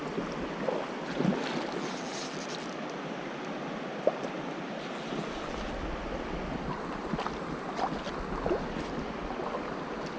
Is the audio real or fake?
real